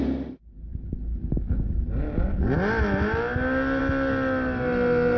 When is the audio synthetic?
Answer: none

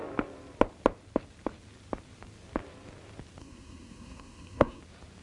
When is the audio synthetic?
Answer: 3.4-4.8 (codec, SNAC)

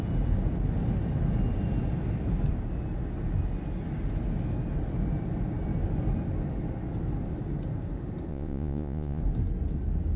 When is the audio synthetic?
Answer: 8.3-9.2 (vocoder, Vocos)

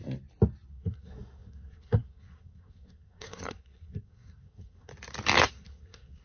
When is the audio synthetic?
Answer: 0.7-4.9 (codec, SNAC); 5.5-6.2

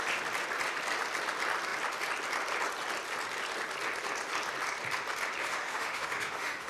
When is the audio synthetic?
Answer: 5.4-6.7 (autoencoder, DAC-VAE)

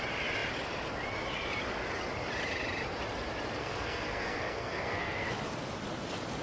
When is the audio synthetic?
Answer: 3.6-5.3 (codec, SNAC)

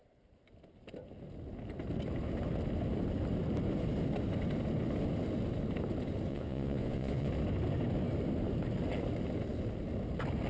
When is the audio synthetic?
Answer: 6.3-7.3 (vocoder, Vocos)

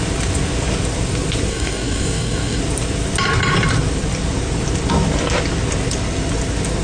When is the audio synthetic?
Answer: 1.5-2.6 (codec, DAC)